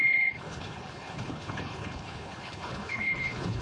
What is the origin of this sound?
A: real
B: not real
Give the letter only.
B